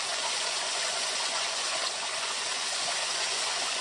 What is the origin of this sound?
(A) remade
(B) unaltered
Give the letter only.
A